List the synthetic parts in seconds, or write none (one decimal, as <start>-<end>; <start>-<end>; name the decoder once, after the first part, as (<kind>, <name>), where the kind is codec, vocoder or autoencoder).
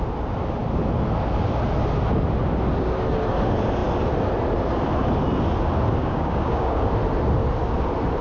6.0-6.9 (codec, DAC)